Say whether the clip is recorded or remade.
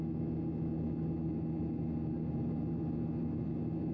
recorded